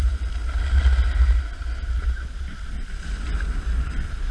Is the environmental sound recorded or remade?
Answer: recorded